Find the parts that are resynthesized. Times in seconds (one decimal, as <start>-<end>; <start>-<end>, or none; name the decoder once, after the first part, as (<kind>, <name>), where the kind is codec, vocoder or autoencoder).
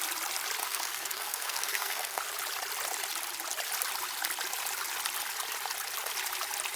0.6-2.2 (codec, SNAC)